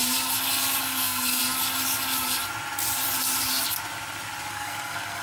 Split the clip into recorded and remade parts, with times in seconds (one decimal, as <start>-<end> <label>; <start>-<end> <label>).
0.0-0.8 recorded; 0.8-1.4 remade; 1.4-4.5 recorded; 4.5-5.2 remade